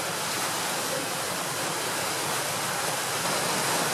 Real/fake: fake